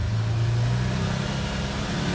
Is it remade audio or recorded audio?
recorded